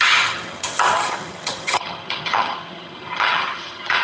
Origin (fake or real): fake